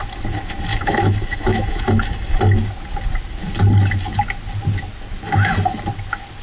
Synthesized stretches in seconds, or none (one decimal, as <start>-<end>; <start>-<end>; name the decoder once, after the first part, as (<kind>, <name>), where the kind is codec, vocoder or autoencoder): 0.7-2.4 (autoencoder, DAC-VAE)